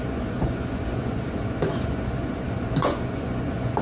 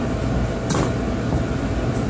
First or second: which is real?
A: second